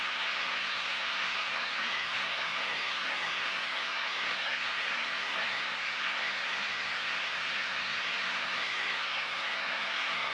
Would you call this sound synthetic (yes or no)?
yes